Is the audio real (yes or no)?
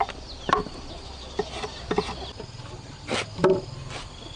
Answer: yes